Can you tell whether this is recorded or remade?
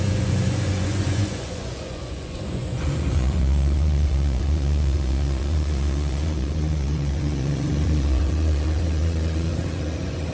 remade